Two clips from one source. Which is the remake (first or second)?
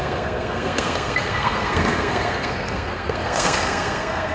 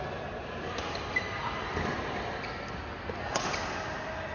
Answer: first